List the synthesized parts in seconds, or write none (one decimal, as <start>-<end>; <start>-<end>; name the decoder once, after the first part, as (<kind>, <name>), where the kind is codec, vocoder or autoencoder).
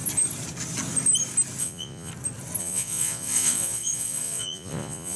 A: 1.6-2.1 (vocoder, Vocos); 2.6-5.2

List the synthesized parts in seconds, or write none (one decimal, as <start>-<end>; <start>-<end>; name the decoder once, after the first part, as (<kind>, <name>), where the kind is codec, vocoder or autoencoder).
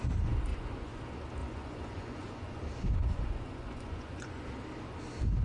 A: 0.5-1.0 (vocoder, Vocos); 1.4-2.6; 3.0-4.4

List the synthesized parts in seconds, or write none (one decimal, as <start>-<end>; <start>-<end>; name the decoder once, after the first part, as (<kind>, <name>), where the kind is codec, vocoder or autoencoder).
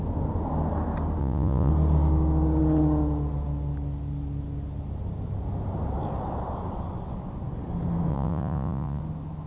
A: 1.2-1.7 (vocoder, Vocos); 8.1-9.0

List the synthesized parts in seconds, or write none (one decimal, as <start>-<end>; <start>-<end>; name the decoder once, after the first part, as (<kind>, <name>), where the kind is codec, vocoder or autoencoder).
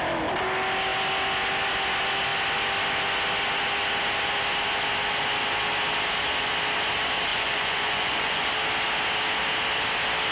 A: 7.3-8.5 (vocoder, Vocos)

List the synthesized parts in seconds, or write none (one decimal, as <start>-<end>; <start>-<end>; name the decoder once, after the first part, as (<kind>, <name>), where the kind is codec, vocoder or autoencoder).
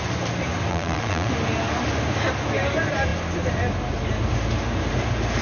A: 0.7-1.3 (vocoder, Vocos)